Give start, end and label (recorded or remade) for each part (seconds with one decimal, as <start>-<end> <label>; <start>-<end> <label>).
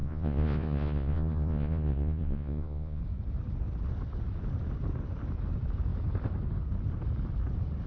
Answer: 0.0-3.0 remade; 3.0-7.9 recorded